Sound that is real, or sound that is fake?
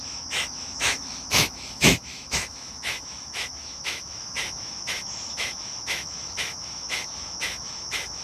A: fake